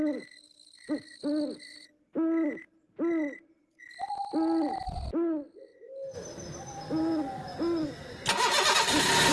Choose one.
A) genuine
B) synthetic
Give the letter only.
A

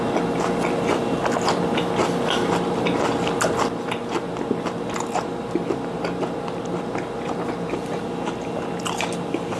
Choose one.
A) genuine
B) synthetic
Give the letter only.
A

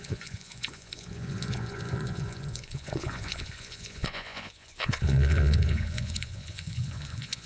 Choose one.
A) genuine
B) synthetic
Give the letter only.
B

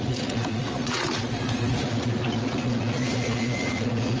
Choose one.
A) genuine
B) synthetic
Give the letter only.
B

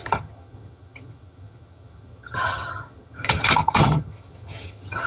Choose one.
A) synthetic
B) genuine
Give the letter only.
A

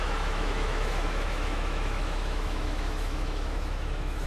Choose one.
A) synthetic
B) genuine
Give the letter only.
A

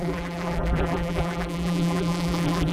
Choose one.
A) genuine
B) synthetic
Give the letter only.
B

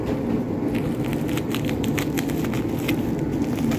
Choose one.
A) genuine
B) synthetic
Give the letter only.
A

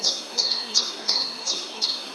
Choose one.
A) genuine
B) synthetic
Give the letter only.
B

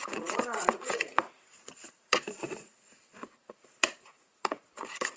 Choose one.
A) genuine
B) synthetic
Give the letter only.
B